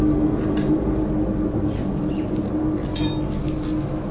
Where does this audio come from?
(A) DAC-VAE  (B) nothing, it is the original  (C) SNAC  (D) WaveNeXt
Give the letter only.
B